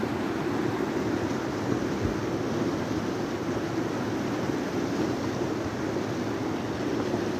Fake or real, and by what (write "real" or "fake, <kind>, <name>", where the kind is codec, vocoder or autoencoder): real